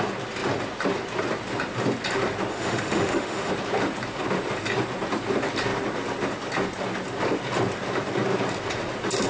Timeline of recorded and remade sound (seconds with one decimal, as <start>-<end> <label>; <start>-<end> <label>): 0.0-2.5 recorded; 2.5-3.5 remade; 3.5-9.3 recorded